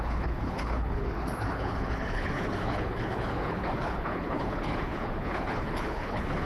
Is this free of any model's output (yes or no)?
no